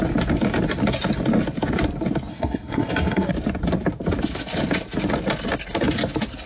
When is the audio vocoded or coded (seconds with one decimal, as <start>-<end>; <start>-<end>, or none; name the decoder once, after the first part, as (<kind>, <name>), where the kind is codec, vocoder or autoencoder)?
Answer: 2.3-3.3 (codec, SNAC)